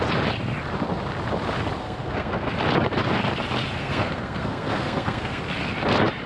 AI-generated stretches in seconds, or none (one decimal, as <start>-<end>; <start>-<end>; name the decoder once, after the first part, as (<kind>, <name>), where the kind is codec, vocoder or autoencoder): 1.8-2.5 (codec, SNAC); 3.8-5.4